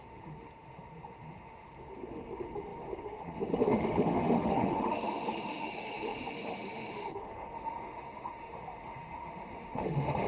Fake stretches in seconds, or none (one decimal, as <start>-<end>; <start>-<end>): 0.0-10.3

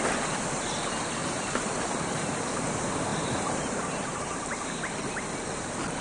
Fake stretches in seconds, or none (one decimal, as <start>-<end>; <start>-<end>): 1.2-2.5; 3.1-4.2

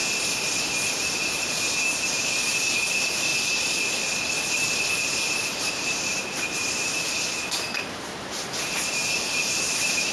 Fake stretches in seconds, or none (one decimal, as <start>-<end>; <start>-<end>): 0.0-3.3; 5.1-6.9; 7.8-10.1

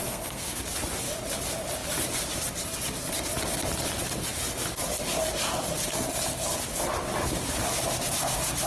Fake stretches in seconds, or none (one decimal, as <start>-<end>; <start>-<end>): 0.0-0.6